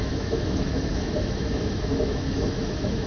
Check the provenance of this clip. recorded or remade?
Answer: remade